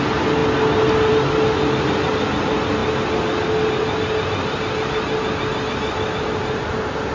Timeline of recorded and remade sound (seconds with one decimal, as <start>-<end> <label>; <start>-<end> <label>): 0.0-7.1 recorded